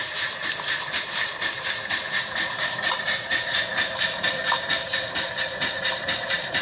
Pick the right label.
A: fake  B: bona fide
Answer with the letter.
A